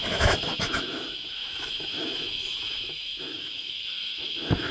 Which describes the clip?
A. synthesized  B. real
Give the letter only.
A